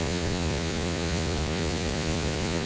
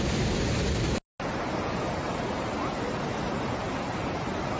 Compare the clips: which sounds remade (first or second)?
first